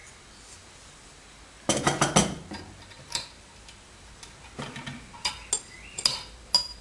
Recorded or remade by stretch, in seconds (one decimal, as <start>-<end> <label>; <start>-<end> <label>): 0.0-6.8 recorded